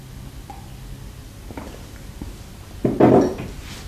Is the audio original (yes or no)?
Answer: yes